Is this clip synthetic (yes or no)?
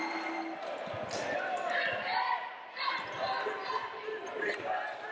no